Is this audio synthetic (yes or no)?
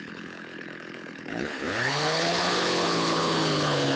yes